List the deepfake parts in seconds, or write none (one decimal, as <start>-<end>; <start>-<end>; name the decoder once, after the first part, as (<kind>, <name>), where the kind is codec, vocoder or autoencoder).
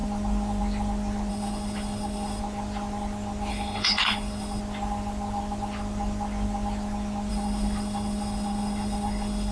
1.3-2.4 (codec, HILCodec); 3.5-4.6; 7.3-9.5